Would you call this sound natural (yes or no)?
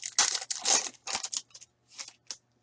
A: yes